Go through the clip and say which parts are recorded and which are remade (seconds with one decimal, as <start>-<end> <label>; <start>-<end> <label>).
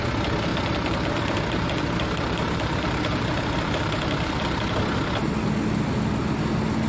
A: 0.0-0.5 recorded; 0.5-4.6 remade; 4.6-6.9 recorded